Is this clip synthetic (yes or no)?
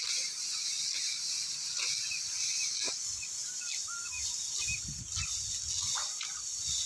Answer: no